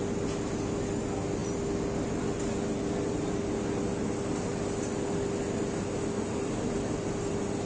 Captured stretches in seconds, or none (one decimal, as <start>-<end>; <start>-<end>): 0.0-7.7